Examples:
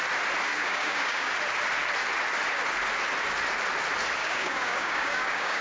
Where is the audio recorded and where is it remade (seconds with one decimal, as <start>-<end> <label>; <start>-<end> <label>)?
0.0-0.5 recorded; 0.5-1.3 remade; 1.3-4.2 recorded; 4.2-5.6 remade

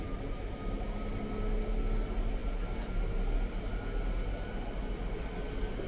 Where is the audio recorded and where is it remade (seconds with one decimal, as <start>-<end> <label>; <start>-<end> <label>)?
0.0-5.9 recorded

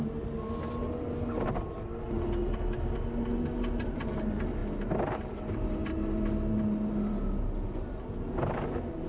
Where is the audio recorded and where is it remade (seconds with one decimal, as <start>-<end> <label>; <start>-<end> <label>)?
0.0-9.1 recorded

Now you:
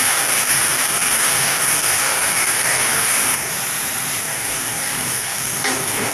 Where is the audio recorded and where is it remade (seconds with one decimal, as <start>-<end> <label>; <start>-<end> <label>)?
0.0-3.5 remade; 3.5-4.2 recorded; 4.2-6.1 remade

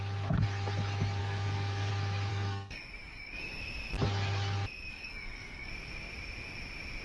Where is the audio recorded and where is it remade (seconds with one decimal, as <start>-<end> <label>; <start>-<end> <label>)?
0.0-1.2 recorded; 1.2-1.9 remade; 1.9-2.3 recorded; 2.3-3.6 remade; 3.6-4.9 recorded; 4.9-5.7 remade; 5.7-7.0 recorded